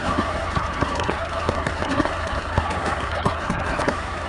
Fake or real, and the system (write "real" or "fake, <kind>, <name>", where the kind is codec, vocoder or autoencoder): fake, codec, SNAC